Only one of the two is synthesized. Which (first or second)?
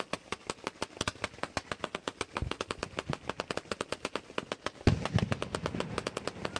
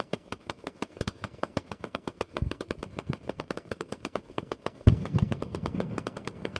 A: second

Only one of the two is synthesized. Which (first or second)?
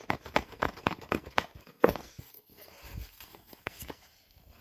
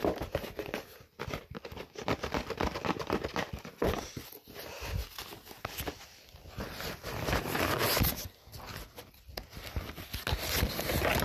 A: first